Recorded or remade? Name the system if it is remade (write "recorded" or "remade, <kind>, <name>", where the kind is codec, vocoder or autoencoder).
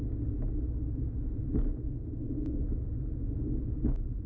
recorded